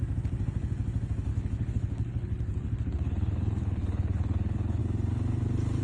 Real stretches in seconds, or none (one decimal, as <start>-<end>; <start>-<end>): 0.0-1.3; 4.8-5.8